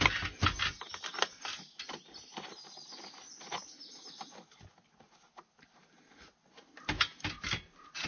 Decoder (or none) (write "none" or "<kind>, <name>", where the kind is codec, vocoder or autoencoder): none